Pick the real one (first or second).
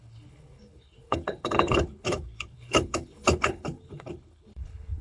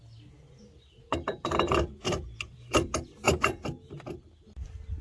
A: second